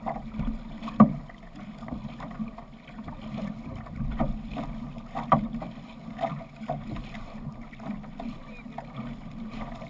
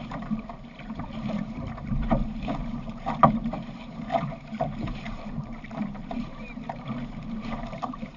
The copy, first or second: second